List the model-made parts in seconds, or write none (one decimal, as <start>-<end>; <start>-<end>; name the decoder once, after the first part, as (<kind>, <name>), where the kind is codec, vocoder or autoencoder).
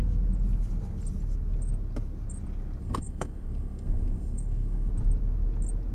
2.8-4.9 (codec, SNAC)